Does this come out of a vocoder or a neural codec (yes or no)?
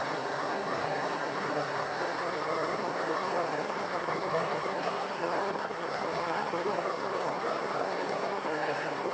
yes